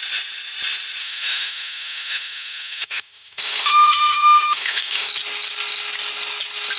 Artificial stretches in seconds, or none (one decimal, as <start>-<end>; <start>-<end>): 1.0-5.1